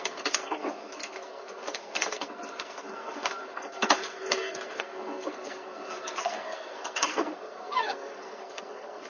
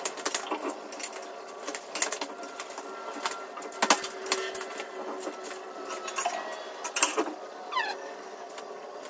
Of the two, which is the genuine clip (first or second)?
second